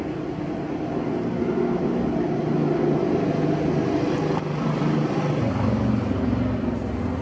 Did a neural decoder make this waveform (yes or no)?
no